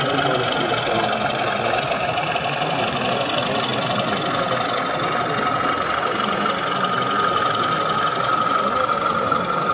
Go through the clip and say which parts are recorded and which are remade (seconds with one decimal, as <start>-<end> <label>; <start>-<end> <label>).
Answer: 0.0-2.2 recorded; 2.2-3.1 remade; 3.1-9.7 recorded